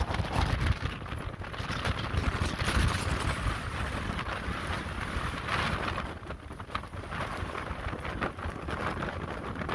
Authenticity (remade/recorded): recorded